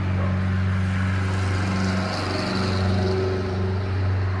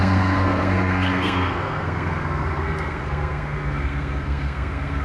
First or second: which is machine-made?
second